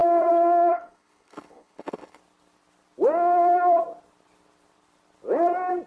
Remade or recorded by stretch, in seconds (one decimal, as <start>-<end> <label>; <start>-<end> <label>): 0.0-0.7 recorded; 0.7-2.2 remade; 2.2-5.9 recorded